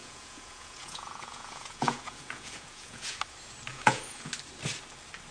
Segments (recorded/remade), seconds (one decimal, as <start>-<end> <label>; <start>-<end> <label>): 0.0-3.2 remade; 3.2-3.7 recorded; 3.7-4.3 remade; 4.3-5.3 recorded